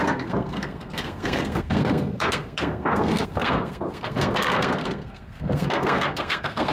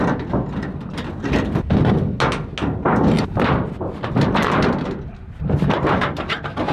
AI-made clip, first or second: first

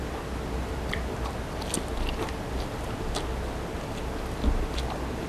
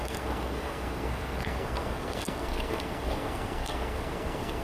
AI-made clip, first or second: second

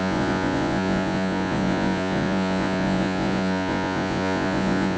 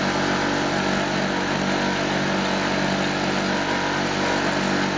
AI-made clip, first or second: first